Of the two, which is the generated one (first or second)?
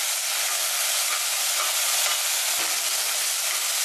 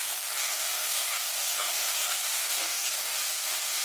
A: second